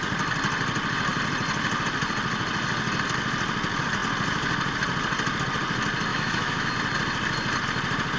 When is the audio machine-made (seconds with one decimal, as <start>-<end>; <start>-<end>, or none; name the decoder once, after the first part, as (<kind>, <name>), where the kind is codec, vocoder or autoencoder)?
6.1-6.7 (autoencoder, DAC-VAE)